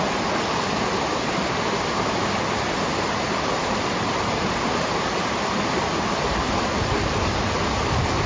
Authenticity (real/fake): real